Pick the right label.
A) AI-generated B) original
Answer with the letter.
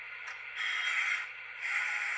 B